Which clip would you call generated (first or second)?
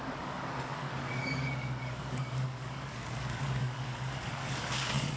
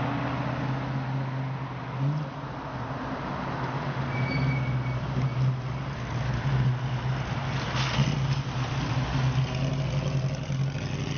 first